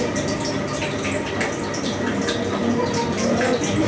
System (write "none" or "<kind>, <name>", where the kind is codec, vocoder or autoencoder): none